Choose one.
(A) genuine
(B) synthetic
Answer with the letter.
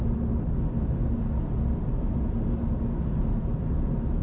A